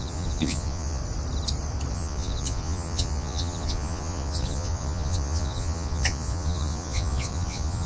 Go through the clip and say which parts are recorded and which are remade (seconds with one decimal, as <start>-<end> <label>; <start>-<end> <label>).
0.0-1.0 remade; 1.0-1.9 recorded; 1.9-7.9 remade